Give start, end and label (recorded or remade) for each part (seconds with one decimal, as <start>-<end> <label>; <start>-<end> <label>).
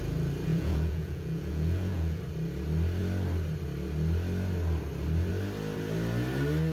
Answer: 0.0-0.5 recorded; 0.5-2.2 remade; 2.2-6.7 recorded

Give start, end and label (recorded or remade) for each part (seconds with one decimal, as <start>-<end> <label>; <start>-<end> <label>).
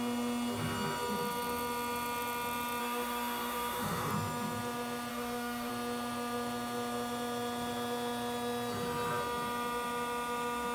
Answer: 0.0-2.8 recorded; 2.8-4.1 remade; 4.1-5.1 recorded; 5.1-5.7 remade; 5.7-10.7 recorded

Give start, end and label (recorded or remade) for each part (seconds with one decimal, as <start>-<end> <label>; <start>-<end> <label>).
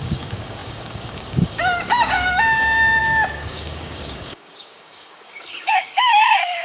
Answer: 0.0-6.6 remade